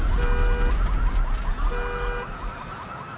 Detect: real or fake real